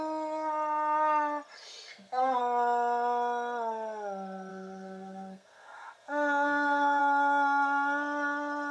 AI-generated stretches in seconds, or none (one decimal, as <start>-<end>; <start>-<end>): 1.9-2.4; 4.5-7.0